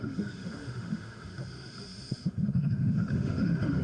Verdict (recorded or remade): remade